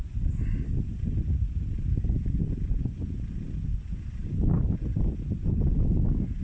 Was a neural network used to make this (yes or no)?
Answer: no